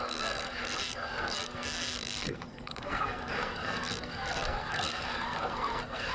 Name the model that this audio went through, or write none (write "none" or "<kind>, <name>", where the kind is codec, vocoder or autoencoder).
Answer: codec, SNAC